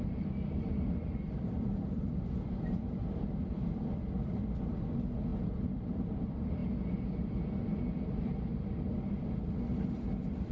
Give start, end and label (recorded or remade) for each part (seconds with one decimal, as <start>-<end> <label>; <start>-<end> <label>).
0.0-6.6 remade; 6.6-9.0 recorded; 9.0-10.5 remade